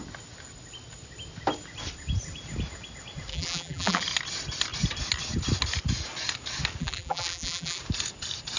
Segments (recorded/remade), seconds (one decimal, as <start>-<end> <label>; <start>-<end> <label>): 0.0-3.3 recorded; 3.3-4.0 remade; 4.0-6.8 recorded; 6.8-7.8 remade; 7.8-8.6 recorded